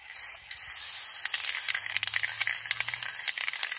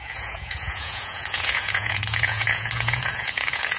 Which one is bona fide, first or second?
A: first